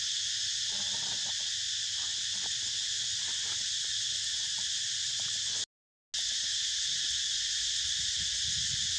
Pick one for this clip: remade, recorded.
recorded